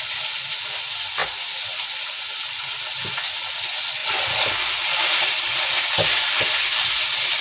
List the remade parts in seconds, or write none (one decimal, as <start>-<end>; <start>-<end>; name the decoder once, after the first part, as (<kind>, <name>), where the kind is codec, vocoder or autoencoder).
none